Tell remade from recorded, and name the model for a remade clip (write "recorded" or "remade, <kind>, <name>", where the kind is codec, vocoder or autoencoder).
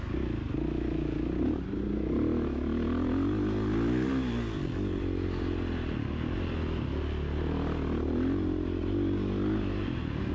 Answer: recorded